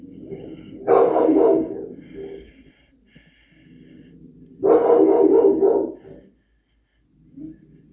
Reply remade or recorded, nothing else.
recorded